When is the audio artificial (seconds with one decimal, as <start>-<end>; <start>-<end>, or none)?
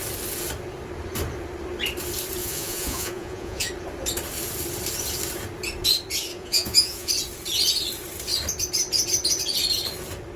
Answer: 2.4-3.7; 6.3-7.1